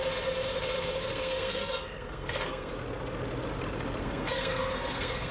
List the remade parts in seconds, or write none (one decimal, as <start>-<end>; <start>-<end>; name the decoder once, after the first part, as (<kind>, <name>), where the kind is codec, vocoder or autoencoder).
1.1-2.7 (codec, SNAC); 4.0-5.3